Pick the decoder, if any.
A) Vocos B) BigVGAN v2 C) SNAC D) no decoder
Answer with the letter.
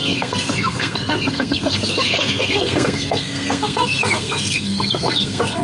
C